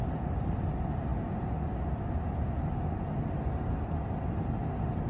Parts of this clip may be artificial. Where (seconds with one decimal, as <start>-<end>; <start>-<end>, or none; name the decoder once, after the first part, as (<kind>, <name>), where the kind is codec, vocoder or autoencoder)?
none